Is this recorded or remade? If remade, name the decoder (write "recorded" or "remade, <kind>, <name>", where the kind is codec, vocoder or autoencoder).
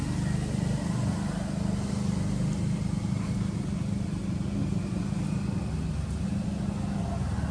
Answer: recorded